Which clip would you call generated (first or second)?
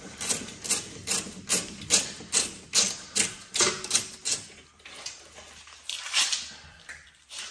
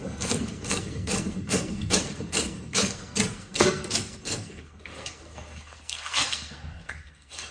second